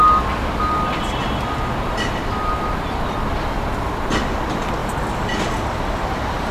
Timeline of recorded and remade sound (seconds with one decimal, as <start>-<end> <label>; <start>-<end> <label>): 0.0-4.8 recorded; 4.8-5.8 remade; 5.8-6.5 recorded